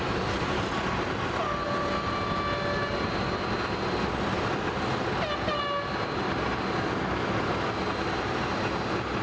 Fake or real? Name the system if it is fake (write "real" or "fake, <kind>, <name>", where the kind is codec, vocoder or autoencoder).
real